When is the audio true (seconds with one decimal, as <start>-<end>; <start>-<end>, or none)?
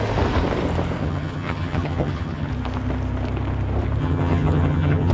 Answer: 0.0-1.0; 2.5-4.0